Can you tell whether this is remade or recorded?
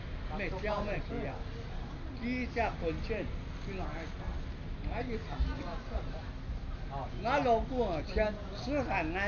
recorded